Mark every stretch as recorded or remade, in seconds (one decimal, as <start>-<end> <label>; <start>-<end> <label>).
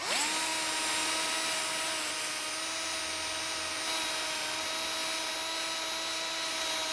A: 0.0-6.9 recorded